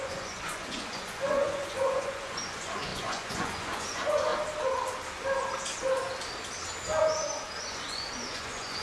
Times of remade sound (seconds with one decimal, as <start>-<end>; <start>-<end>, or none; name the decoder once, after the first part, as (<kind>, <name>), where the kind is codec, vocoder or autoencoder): 0.0-4.3 (vocoder, Vocos); 7.6-8.8